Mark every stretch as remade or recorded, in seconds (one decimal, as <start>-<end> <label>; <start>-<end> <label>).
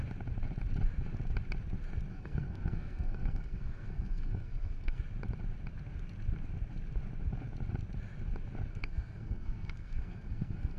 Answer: 0.0-2.1 recorded; 2.1-5.0 remade; 5.0-8.7 recorded; 8.7-10.8 remade